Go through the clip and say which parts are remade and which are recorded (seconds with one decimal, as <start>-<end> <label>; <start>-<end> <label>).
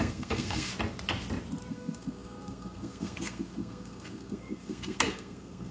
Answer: 0.0-0.7 remade; 0.7-1.7 recorded; 1.7-5.7 remade